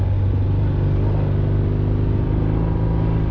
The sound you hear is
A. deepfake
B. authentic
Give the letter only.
B